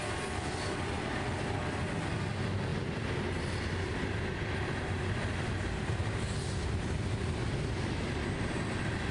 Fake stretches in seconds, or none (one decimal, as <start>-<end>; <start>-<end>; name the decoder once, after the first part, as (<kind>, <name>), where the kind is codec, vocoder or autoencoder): none